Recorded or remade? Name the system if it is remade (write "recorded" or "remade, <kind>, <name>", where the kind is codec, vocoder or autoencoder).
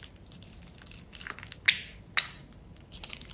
recorded